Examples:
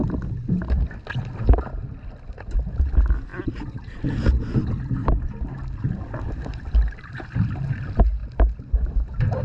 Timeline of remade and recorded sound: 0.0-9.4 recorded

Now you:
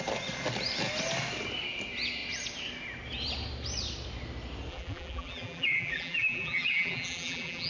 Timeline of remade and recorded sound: 0.0-4.7 recorded; 4.7-7.7 remade

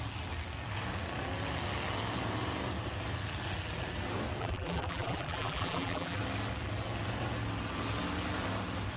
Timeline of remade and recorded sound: 0.0-4.4 recorded; 4.4-6.2 remade; 6.2-9.0 recorded